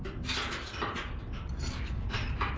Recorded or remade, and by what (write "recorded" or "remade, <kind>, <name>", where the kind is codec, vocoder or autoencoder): recorded